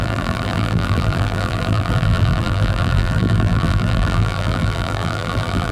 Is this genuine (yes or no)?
no